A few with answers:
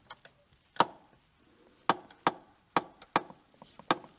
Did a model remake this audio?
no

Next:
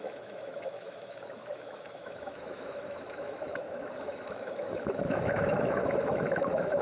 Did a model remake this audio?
yes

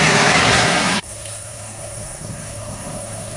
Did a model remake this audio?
yes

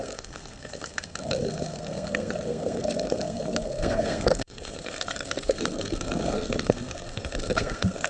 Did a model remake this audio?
yes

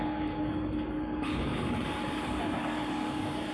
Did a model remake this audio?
yes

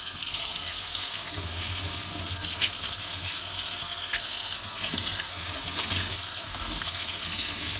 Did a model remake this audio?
yes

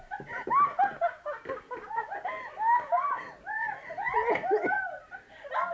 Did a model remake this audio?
no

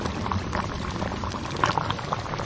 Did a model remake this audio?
yes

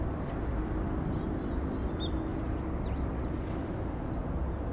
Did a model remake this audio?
no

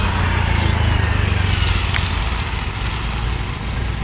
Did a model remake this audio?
no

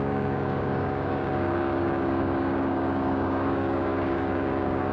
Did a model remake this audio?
yes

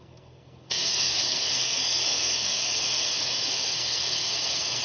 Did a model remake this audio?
yes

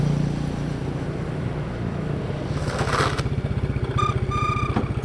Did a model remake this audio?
no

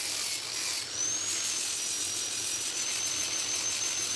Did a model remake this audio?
no